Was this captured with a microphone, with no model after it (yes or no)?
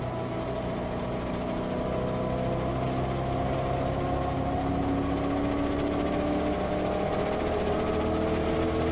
yes